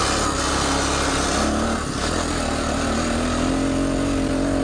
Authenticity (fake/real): real